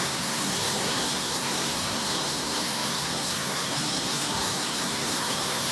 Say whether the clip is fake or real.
fake